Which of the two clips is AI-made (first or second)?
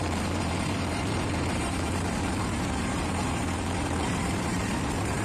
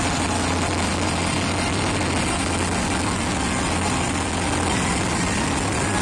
first